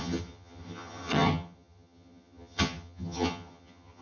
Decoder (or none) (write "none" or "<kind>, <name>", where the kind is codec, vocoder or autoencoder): vocoder, HiFi-GAN